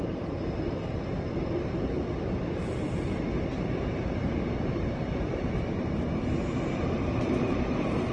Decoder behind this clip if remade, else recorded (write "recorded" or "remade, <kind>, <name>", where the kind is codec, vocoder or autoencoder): remade, vocoder, BigVGAN v2